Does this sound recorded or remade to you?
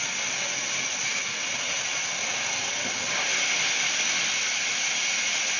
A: recorded